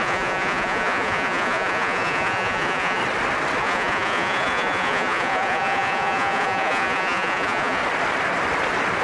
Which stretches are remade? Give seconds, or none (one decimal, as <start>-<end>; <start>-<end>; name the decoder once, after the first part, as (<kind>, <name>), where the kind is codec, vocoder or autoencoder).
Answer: 0.0-3.0 (vocoder, Vocos); 3.6-7.8